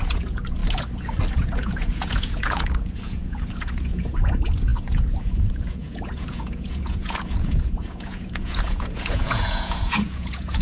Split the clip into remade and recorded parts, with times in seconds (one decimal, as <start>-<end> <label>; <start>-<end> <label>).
0.0-0.6 remade; 0.6-1.3 recorded; 1.3-10.6 remade